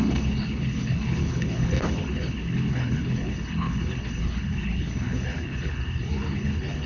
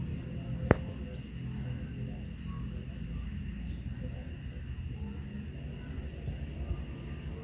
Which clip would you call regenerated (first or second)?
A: first